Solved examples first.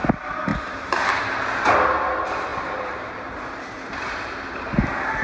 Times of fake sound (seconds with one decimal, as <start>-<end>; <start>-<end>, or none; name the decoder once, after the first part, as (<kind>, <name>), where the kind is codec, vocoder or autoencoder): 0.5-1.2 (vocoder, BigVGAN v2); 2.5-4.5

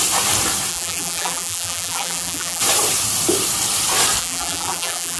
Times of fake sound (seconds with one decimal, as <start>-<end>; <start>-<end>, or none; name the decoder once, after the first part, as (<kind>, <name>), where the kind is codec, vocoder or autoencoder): 0.7-2.6 (vocoder, BigVGAN v2); 4.2-5.2

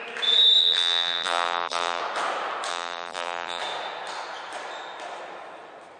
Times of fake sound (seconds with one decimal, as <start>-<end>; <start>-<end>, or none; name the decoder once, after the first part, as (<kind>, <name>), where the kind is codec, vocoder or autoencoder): 0.6-2.0 (vocoder, BigVGAN v2); 2.7-3.6